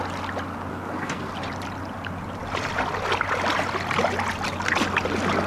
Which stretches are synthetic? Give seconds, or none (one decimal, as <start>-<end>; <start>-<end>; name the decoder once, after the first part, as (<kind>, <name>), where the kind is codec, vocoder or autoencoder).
0.7-1.3 (codec, SNAC)